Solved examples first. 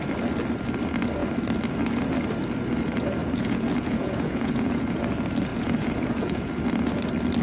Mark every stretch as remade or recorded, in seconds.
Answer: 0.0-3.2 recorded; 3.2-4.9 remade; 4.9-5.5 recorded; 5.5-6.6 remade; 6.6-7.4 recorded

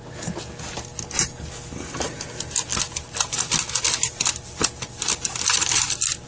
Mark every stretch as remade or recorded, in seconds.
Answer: 0.0-6.3 recorded